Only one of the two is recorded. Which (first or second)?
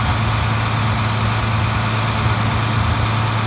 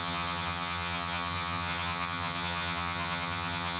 first